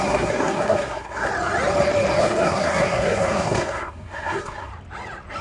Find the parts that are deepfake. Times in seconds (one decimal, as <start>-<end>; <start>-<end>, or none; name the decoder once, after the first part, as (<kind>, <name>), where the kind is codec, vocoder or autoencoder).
0.0-1.3 (codec, SNAC); 2.2-4.7